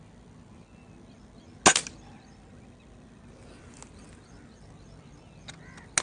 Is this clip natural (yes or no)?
yes